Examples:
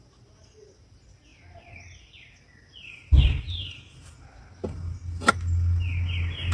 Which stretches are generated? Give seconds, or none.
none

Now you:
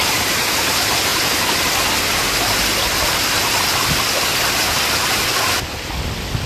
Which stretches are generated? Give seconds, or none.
none